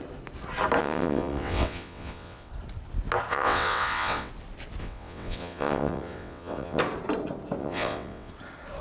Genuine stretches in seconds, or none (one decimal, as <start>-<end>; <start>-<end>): 0.0-0.8; 2.5-3.3; 4.3-4.8; 6.8-7.6; 8.3-8.8

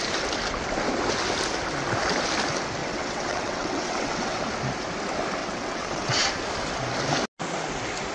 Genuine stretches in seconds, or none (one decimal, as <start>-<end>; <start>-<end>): 0.0-2.8; 4.4-5.4; 6.3-8.1

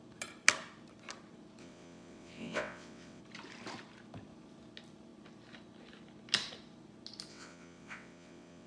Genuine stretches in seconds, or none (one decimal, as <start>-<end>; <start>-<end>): 0.0-1.6; 3.2-7.3

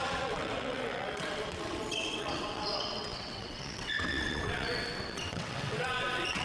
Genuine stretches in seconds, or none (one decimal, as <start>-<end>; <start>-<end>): none